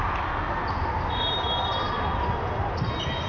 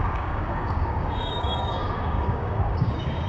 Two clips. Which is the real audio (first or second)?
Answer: first